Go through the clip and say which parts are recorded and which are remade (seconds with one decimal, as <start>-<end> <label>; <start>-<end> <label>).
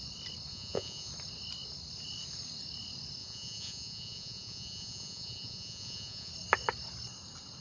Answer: 0.0-0.5 recorded; 0.5-1.1 remade; 1.1-3.2 recorded; 3.2-6.3 remade; 6.3-7.6 recorded